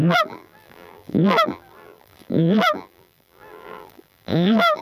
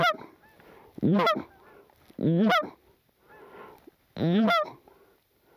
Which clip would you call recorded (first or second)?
second